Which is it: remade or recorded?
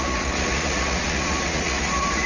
remade